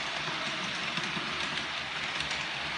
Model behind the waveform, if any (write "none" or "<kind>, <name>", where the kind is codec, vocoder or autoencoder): none